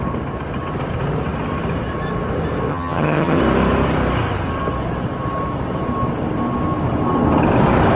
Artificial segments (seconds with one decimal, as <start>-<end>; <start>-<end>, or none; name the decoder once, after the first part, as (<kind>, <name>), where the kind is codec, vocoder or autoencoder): 2.7-3.4 (vocoder, HiFi-GAN)